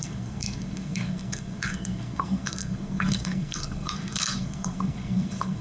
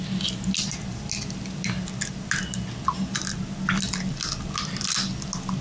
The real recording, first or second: second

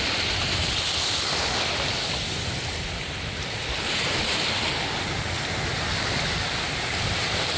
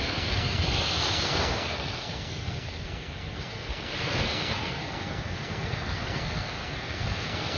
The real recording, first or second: first